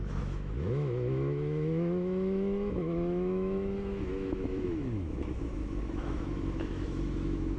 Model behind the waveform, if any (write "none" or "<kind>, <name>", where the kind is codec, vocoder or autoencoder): autoencoder, DAC-VAE